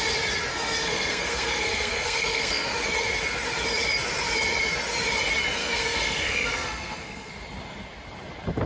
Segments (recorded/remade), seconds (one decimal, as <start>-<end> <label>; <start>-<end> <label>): 0.0-0.5 recorded; 0.5-2.7 remade; 2.7-5.6 recorded; 5.6-7.3 remade; 7.3-8.7 recorded